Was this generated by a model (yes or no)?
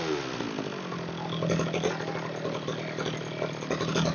no